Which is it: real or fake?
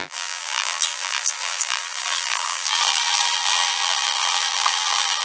fake